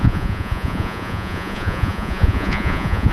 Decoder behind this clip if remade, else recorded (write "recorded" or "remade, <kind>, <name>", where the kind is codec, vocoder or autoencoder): remade, vocoder, Vocos